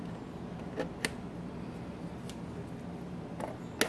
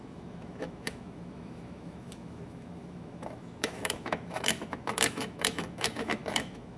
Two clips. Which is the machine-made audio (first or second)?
second